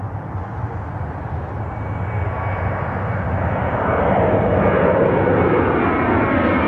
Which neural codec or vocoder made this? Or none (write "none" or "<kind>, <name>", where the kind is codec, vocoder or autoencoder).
none